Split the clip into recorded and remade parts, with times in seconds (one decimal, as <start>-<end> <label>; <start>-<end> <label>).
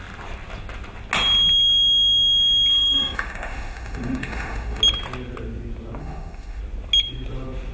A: 0.0-2.7 recorded; 2.7-4.8 remade; 4.8-6.0 recorded; 6.0-6.6 remade; 6.6-7.7 recorded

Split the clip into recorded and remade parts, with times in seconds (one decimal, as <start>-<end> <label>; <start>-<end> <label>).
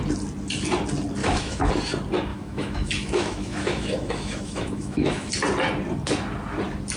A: 0.0-1.2 recorded; 1.2-1.7 remade; 1.7-2.3 recorded; 2.3-5.3 remade; 5.3-7.0 recorded